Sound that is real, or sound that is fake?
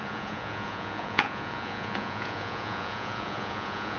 fake